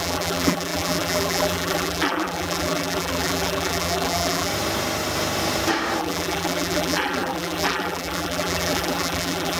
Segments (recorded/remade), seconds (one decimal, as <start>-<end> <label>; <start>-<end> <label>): 0.0-4.5 remade; 4.5-6.0 recorded; 6.0-9.6 remade